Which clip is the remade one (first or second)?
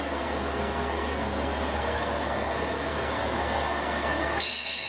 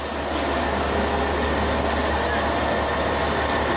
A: first